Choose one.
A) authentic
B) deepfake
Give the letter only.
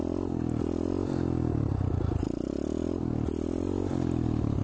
A